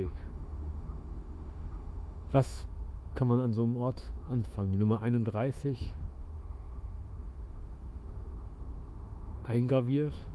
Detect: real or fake fake